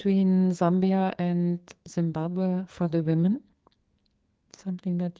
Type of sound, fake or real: fake